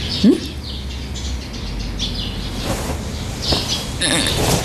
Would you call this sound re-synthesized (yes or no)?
no